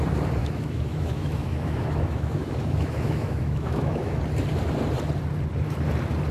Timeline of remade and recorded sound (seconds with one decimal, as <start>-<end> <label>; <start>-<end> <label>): 0.0-0.4 recorded; 0.4-4.2 remade; 4.2-6.3 recorded